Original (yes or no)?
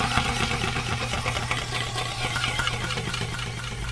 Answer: yes